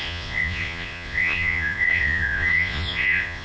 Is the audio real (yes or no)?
no